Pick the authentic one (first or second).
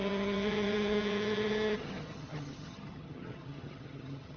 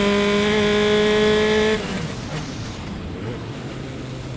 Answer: second